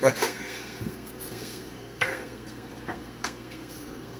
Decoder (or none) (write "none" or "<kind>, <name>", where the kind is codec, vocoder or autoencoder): codec, SNAC